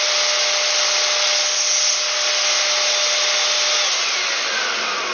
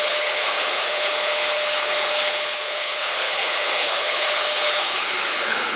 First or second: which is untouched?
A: first